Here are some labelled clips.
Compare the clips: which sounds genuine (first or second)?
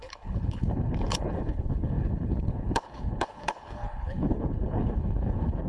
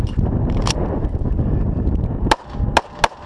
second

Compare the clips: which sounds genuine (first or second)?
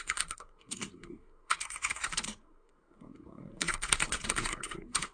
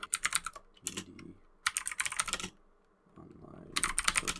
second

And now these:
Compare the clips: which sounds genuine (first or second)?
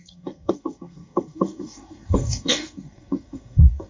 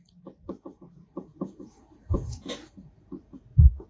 second